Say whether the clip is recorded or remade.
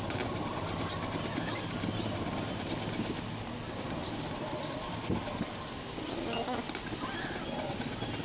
recorded